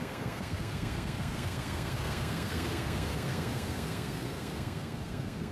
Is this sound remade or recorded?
remade